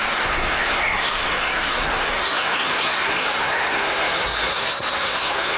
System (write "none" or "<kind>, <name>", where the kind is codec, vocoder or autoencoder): codec, SNAC